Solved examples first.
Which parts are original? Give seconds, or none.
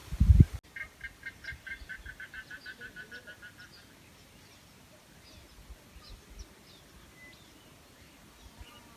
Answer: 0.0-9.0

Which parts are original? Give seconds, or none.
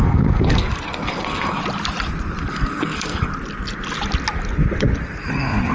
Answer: 1.6-2.5; 3.3-5.7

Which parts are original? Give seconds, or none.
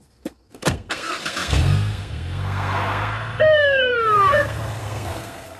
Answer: none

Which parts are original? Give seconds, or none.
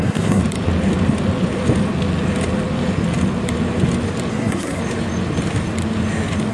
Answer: 0.4-4.3; 4.8-6.5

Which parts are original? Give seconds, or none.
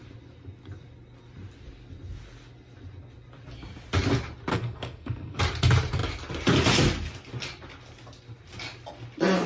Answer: 0.0-4.5; 5.4-9.5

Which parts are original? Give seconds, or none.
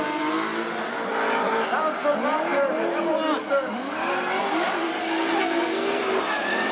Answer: 0.0-5.4; 6.0-6.7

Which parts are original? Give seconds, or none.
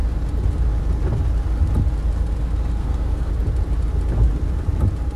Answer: 0.0-2.8; 3.3-5.2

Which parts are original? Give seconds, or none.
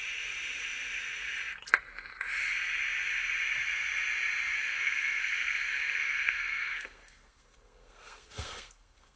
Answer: 0.0-4.6